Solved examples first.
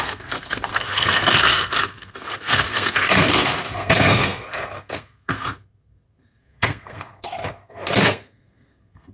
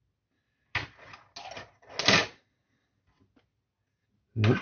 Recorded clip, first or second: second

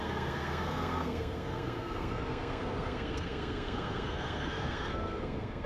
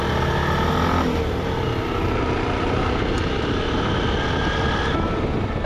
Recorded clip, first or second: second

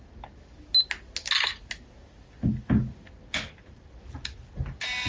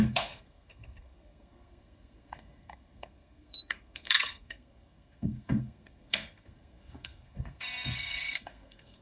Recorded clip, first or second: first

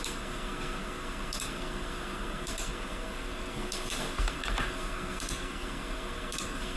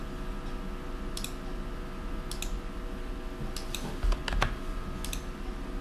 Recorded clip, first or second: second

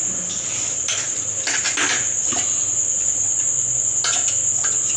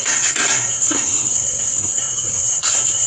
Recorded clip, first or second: first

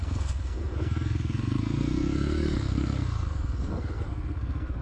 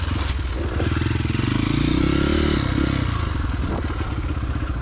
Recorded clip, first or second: second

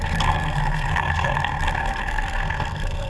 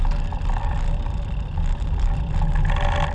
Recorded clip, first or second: second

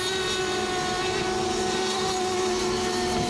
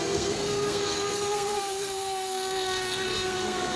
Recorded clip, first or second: first